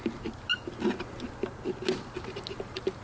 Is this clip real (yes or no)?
yes